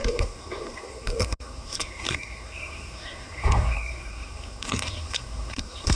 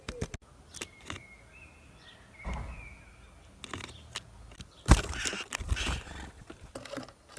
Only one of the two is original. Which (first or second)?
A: second